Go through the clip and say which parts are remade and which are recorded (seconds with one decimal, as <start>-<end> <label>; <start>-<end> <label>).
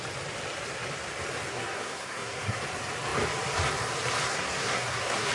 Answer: 0.0-1.5 recorded; 1.5-2.6 remade; 2.6-4.3 recorded; 4.3-5.3 remade